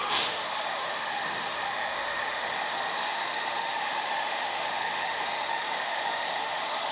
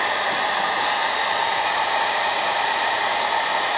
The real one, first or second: second